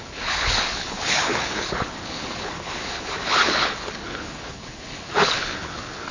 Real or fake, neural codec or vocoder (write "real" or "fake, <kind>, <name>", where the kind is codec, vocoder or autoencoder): fake, codec, HILCodec